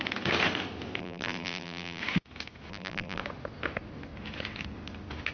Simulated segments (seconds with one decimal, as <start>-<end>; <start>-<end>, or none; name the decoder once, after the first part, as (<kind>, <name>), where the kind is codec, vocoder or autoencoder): 1.0-2.0 (vocoder, BigVGAN v2); 2.7-3.2